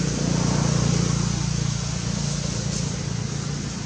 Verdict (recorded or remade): recorded